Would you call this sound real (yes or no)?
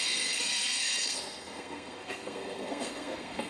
no